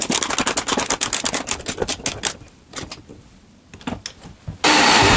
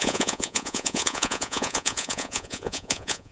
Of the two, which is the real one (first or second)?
first